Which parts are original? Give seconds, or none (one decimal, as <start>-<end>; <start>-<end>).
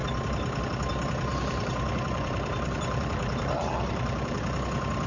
0.0-1.3; 4.4-5.1